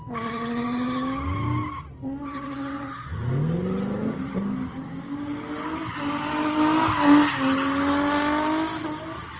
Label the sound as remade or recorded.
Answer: recorded